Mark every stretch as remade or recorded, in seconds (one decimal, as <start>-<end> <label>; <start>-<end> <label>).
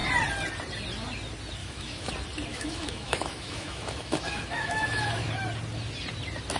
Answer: 0.0-1.6 recorded; 1.6-2.1 remade; 2.1-2.5 recorded; 2.5-5.3 remade; 5.3-6.6 recorded